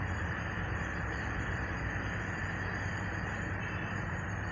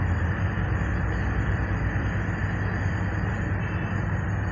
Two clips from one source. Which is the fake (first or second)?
first